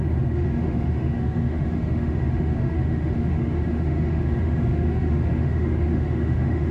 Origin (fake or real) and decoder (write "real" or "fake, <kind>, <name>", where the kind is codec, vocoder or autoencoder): fake, autoencoder, DAC-VAE